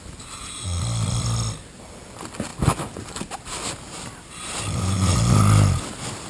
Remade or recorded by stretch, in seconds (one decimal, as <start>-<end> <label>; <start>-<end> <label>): 0.0-6.3 recorded